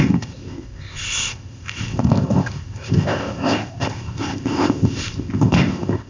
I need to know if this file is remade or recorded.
remade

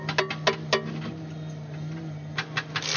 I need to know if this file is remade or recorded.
recorded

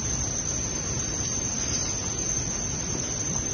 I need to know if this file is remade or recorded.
recorded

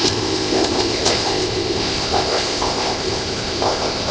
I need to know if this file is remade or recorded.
remade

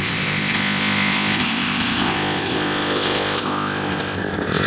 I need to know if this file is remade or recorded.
remade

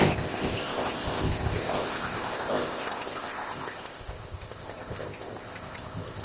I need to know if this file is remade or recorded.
remade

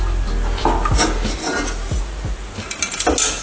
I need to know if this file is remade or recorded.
recorded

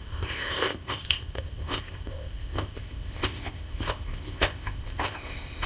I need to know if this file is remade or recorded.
remade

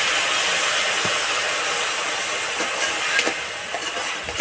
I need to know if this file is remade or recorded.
recorded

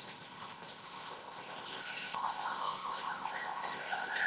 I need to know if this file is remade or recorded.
remade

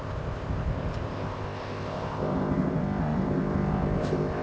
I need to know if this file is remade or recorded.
remade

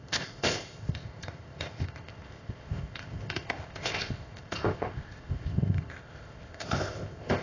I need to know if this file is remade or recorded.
remade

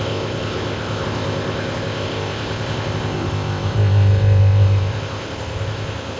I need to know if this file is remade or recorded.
remade